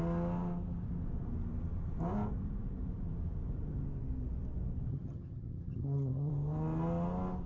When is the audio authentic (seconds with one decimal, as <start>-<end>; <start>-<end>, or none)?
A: 0.0-4.9; 6.3-7.5